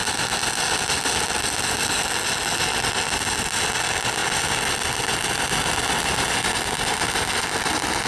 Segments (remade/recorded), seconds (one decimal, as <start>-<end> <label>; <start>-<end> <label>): 0.0-8.1 recorded